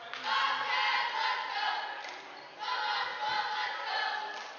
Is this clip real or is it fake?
real